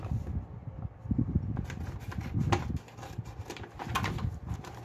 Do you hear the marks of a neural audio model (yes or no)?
no